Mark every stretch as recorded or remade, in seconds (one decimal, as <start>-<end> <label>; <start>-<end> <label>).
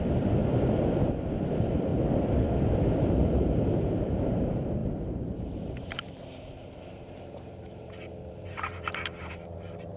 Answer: 0.0-0.4 remade; 0.4-1.5 recorded; 1.5-1.9 remade; 1.9-2.9 recorded; 2.9-10.0 remade